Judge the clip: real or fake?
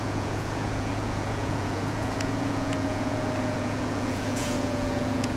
fake